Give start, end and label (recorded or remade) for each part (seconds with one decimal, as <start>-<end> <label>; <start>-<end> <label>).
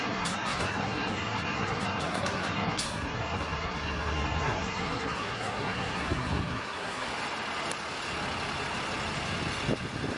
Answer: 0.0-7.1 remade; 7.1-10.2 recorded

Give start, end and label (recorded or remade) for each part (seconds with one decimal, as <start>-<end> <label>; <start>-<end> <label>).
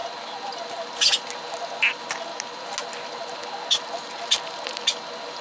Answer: 0.0-5.4 recorded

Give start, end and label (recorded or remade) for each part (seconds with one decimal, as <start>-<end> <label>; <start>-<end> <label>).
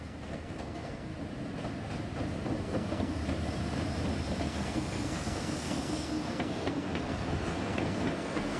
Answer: 0.0-1.1 remade; 1.1-2.6 recorded; 2.6-3.2 remade; 3.2-4.4 recorded; 4.4-8.6 remade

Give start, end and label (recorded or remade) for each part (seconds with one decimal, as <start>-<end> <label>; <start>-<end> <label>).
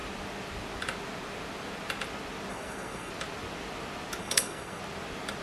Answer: 0.0-2.5 recorded; 2.5-3.1 remade; 3.1-4.2 recorded; 4.2-4.8 remade; 4.8-5.4 recorded